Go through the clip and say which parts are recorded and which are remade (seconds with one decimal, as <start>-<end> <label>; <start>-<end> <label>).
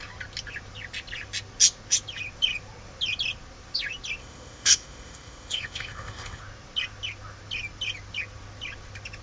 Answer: 0.0-4.2 recorded; 4.2-6.4 remade; 6.4-9.2 recorded